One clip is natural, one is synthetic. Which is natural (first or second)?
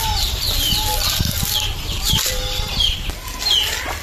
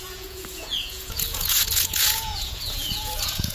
first